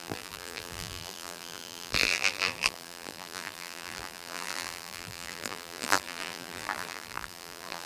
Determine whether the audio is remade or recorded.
remade